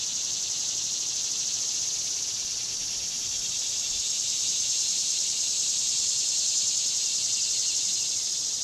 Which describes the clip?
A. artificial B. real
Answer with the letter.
A